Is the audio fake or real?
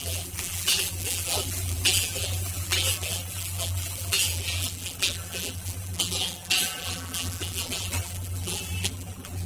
fake